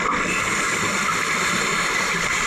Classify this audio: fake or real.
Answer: real